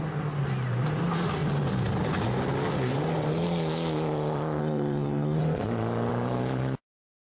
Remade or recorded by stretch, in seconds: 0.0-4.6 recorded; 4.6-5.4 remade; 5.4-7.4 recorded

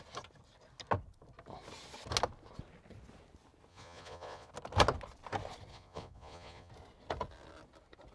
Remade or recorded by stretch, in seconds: 0.0-3.7 recorded; 3.7-4.5 remade; 4.5-5.7 recorded; 5.7-6.7 remade; 6.7-8.1 recorded

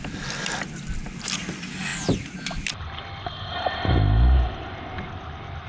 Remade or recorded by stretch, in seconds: 0.0-5.7 recorded

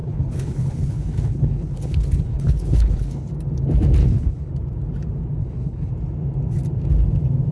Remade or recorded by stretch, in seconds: 0.0-3.3 remade; 3.3-4.0 recorded; 4.0-4.5 remade; 4.5-5.4 recorded; 5.4-5.9 remade; 5.9-7.5 recorded

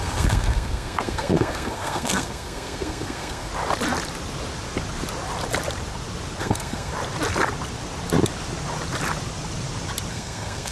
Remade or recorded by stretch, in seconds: 0.0-3.5 remade; 3.5-6.4 recorded; 6.4-6.9 remade; 6.9-10.1 recorded; 10.1-10.7 remade

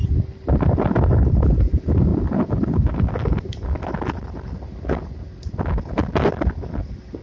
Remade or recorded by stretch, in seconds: 0.0-7.2 recorded

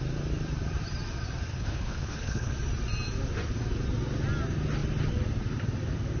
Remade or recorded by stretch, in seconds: 0.0-1.5 recorded; 1.5-2.5 remade; 2.5-6.2 recorded

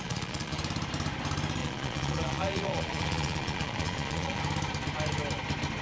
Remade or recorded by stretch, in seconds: 0.0-0.6 remade; 0.6-1.6 recorded; 1.6-4.4 remade; 4.4-5.8 recorded